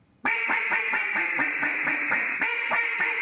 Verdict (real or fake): fake